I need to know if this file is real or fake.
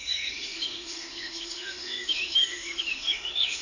fake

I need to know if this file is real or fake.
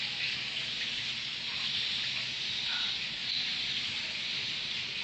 real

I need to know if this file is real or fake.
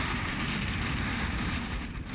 real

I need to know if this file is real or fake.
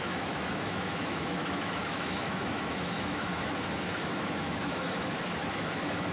fake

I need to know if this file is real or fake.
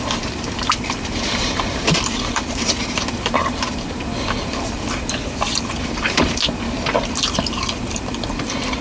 fake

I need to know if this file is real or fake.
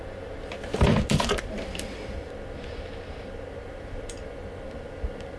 fake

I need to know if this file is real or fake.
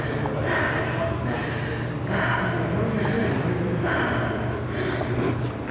real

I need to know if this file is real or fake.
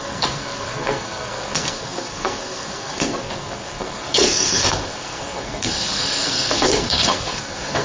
fake